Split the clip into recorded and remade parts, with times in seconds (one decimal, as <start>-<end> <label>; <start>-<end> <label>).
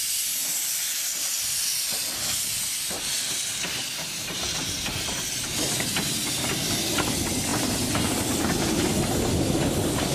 0.0-10.1 recorded